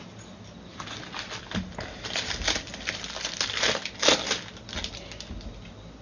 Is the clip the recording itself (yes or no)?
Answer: yes